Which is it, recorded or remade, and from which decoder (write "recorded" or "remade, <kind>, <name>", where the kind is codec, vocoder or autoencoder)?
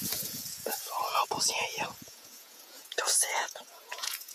remade, vocoder, Vocos